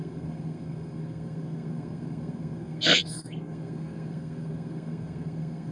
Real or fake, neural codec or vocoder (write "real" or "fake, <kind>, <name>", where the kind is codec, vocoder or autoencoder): fake, codec, SNAC